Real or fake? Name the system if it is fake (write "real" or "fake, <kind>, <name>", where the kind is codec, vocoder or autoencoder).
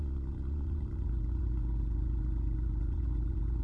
fake, vocoder, Vocos